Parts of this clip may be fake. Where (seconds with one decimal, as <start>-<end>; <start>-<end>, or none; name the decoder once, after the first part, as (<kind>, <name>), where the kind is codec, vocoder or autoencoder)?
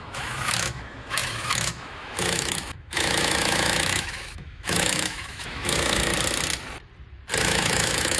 0.0-6.1 (autoencoder, DAC-VAE); 7.4-8.2